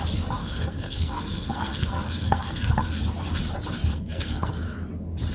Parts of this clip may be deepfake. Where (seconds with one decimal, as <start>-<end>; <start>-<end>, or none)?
0.4-3.0; 3.9-4.5